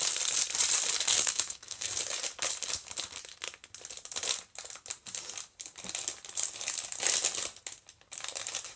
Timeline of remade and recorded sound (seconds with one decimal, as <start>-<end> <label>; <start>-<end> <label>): 0.0-1.1 recorded; 1.1-1.9 remade; 1.9-8.8 recorded